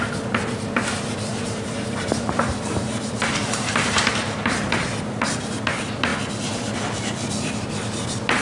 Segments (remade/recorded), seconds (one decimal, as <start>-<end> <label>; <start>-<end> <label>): 0.0-1.3 recorded; 1.3-4.9 remade; 4.9-8.4 recorded